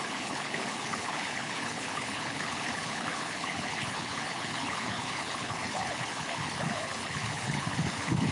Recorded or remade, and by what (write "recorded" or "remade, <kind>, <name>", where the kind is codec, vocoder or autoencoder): remade, codec, HILCodec